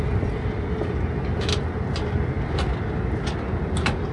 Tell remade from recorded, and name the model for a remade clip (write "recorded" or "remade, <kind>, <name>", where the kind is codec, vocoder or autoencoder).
recorded